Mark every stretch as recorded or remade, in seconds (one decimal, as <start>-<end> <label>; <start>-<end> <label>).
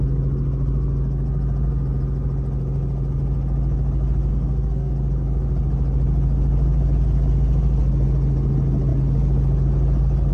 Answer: 0.0-4.3 recorded; 4.3-4.9 remade; 4.9-10.3 recorded